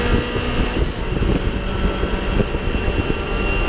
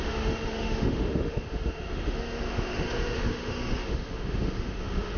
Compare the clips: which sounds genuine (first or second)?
first